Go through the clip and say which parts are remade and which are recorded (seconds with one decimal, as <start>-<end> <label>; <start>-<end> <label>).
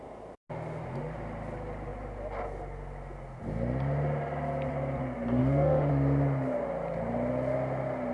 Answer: 0.0-5.4 recorded; 5.4-5.9 remade; 5.9-8.1 recorded